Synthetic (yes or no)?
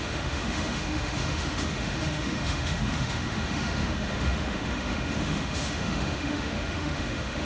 yes